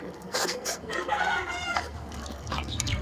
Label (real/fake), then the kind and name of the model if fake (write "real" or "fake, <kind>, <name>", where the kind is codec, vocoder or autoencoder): fake, codec, SNAC